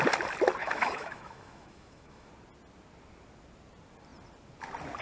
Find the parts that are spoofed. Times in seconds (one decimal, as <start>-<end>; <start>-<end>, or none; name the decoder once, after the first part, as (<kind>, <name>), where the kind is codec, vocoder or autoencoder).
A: 0.6-2.3 (autoencoder, DAC-VAE)